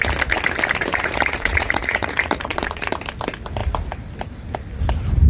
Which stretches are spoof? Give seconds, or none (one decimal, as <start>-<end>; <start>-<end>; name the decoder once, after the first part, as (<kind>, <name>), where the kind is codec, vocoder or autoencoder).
0.9-2.9 (vocoder, Vocos)